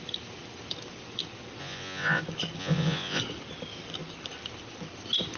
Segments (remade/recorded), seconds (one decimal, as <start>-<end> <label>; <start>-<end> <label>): 0.0-1.6 recorded; 1.6-2.2 remade; 2.2-2.6 recorded; 2.6-3.2 remade; 3.2-5.4 recorded